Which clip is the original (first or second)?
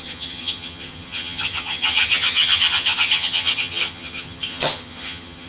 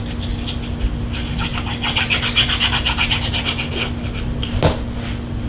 second